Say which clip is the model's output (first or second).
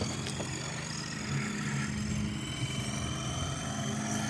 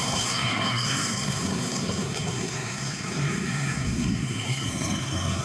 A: second